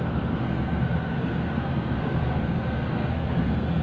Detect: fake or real fake